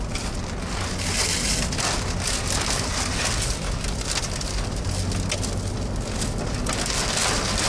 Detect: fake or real real